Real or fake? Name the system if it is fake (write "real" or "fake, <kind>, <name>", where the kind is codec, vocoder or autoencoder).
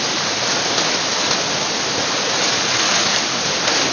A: real